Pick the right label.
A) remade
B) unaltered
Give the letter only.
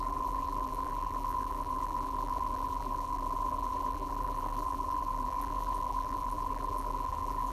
A